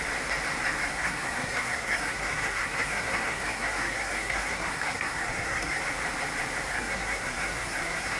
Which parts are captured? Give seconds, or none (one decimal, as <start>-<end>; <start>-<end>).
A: 0.0-0.9; 5.8-6.7